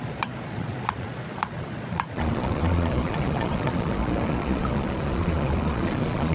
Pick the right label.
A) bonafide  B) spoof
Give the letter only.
B